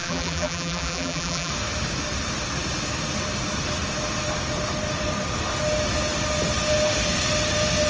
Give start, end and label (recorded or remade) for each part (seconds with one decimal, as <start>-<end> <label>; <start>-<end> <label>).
0.0-1.5 remade; 1.5-7.9 recorded

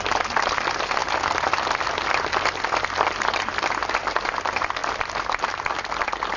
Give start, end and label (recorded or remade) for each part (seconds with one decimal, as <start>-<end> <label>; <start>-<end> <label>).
0.0-4.8 recorded; 4.8-5.4 remade; 5.4-6.4 recorded

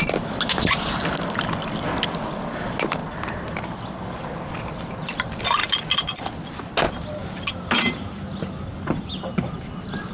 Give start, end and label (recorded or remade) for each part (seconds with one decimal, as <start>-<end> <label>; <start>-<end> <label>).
0.0-10.1 recorded

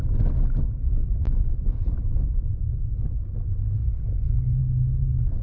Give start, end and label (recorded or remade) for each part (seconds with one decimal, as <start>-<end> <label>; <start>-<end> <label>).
0.0-1.0 recorded; 1.0-2.8 remade; 2.8-5.4 recorded